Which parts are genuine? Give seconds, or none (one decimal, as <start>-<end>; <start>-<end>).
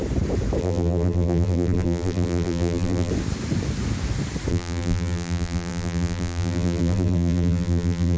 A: 0.0-0.6; 3.1-4.5